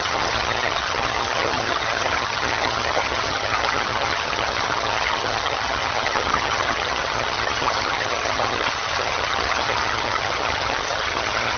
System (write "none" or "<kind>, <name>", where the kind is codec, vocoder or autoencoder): vocoder, HiFi-GAN